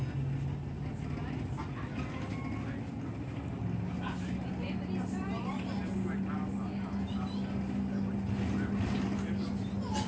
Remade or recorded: recorded